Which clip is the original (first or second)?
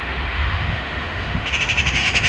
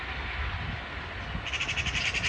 second